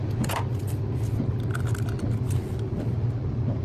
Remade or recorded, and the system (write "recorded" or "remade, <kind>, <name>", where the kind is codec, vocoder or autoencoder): recorded